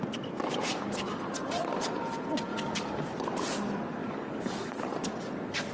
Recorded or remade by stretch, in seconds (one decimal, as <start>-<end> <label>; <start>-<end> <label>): 0.0-0.7 recorded; 0.7-1.3 remade; 1.3-2.5 recorded; 2.5-3.0 remade; 3.0-4.0 recorded; 4.0-4.7 remade; 4.7-5.7 recorded